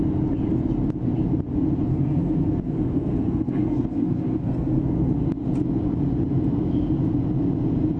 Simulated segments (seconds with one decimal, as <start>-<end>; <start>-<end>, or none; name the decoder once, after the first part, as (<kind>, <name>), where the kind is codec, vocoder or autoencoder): 1.9-5.1 (codec, SNAC)